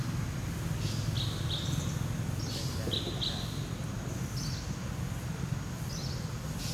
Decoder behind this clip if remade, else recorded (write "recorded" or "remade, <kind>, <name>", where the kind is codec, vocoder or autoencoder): recorded